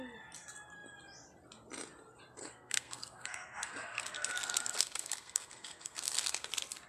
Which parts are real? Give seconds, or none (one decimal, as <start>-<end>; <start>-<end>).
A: 0.0-2.4; 6.5-6.9